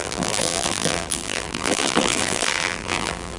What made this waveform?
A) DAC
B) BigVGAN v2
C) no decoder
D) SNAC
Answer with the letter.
B